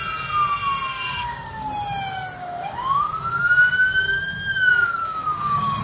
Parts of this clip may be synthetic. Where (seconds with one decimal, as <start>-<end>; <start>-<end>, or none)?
0.9-1.7; 2.4-3.0; 5.0-5.8